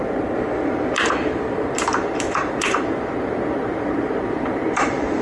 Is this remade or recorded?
remade